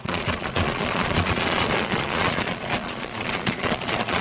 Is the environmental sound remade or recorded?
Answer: remade